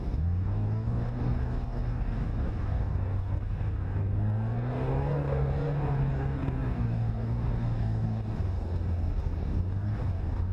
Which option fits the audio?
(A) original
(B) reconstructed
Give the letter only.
B